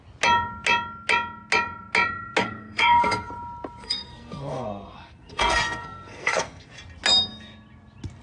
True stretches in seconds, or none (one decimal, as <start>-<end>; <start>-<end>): 0.0-2.4; 3.3-3.8; 6.7-8.2